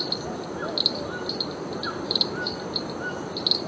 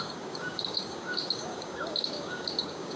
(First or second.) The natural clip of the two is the first